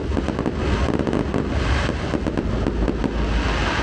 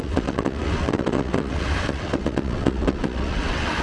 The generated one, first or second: second